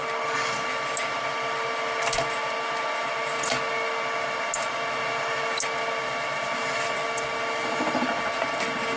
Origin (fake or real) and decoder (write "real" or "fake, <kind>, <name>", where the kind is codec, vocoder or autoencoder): real